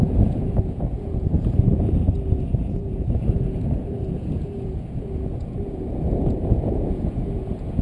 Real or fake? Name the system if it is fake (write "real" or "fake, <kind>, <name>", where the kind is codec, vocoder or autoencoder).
fake, vocoder, Vocos